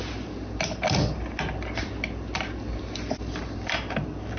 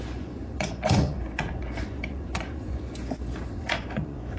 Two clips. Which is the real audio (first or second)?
first